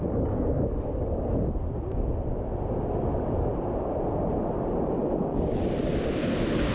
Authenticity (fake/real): real